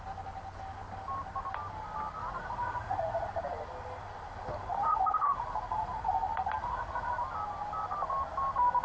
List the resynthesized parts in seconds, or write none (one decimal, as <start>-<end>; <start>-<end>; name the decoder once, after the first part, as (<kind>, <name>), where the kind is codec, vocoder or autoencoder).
2.2-3.3 (vocoder, Vocos); 4.8-6.1; 6.6-7.1